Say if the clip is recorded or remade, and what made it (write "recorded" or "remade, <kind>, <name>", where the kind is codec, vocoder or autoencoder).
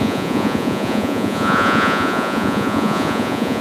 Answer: remade, vocoder, Vocos